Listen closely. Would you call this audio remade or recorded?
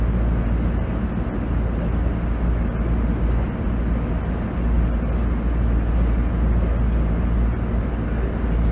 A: recorded